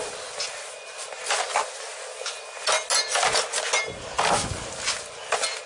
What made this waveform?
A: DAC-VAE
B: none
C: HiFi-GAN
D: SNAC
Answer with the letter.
B